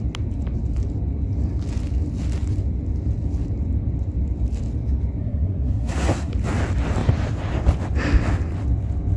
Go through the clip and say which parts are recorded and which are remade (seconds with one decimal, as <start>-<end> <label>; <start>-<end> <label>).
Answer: 0.0-5.2 recorded; 5.2-6.3 remade; 6.3-9.2 recorded

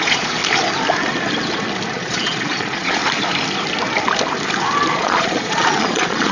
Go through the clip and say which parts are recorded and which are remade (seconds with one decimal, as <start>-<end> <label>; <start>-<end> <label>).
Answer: 0.0-0.4 remade; 0.4-1.9 recorded; 1.9-3.0 remade; 3.0-4.9 recorded; 4.9-6.3 remade

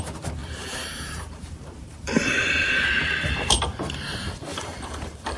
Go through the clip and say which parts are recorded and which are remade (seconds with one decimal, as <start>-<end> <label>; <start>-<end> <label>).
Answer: 0.0-0.4 recorded; 0.4-3.6 remade; 3.6-4.5 recorded; 4.5-5.4 remade